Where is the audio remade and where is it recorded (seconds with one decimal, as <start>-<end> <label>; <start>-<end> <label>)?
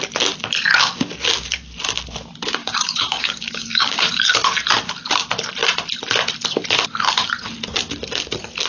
0.0-2.6 recorded; 2.6-4.2 remade; 4.2-8.7 recorded